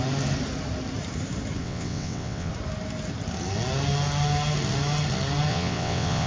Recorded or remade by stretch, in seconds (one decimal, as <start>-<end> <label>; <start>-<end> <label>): 0.0-1.6 recorded; 1.6-2.5 remade; 2.5-5.5 recorded; 5.5-6.3 remade